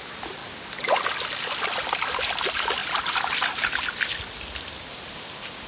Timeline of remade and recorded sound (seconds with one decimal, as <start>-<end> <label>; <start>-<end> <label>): 0.0-5.7 recorded